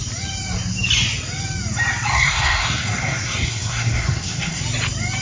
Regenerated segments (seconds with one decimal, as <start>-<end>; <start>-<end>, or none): 2.1-4.6